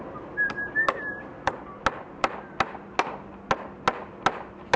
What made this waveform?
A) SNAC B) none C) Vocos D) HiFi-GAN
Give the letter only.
B